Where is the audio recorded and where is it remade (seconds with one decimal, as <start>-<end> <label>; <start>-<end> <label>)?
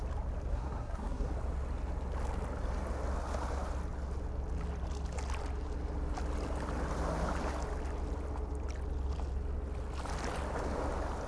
0.0-0.5 recorded; 0.5-1.3 remade; 1.3-11.3 recorded